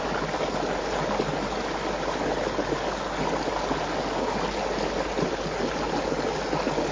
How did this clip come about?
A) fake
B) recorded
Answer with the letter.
B